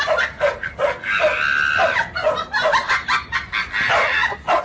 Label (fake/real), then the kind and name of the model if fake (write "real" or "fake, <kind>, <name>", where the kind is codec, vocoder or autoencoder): real